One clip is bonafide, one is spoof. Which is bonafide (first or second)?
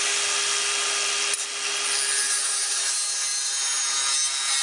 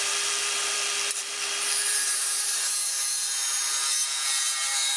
first